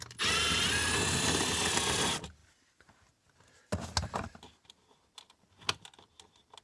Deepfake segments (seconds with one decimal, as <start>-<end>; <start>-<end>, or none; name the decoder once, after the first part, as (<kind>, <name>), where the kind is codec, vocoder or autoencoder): none